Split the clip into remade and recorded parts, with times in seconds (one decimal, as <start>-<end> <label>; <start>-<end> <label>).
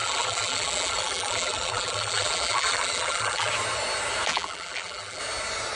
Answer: 0.0-3.5 remade; 3.5-4.3 recorded; 4.3-5.2 remade; 5.2-5.8 recorded